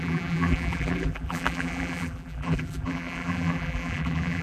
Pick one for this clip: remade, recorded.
remade